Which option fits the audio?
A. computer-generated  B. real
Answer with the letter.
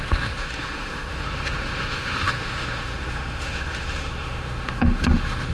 A